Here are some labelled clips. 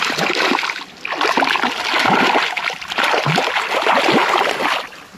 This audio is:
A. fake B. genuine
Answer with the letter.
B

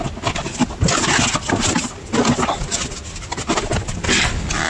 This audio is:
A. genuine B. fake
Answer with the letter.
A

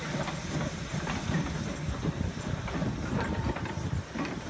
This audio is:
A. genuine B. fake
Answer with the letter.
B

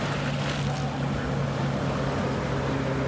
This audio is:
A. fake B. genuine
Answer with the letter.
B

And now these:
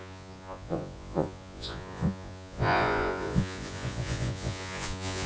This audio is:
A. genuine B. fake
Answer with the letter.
B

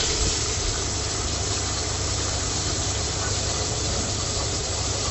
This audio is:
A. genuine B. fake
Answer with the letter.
A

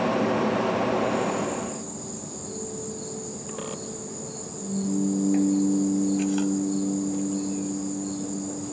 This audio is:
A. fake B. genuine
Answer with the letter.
B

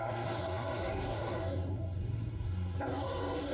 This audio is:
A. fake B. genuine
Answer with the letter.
A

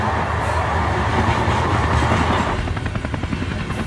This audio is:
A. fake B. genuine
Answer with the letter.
B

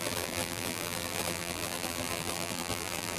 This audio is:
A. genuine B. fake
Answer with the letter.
B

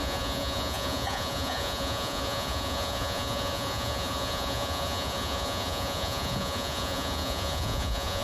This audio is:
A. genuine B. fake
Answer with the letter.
B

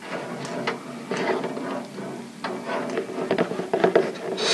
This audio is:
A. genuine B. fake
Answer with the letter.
A